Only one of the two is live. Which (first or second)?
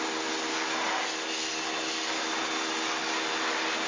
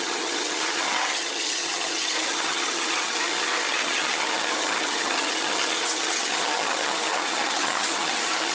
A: first